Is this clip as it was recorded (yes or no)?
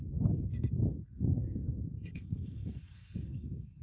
no